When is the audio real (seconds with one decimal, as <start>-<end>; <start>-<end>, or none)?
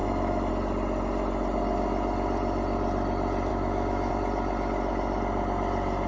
0.5-3.5; 4.1-6.1